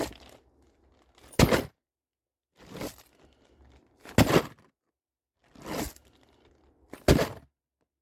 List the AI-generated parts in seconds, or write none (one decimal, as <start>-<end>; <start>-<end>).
none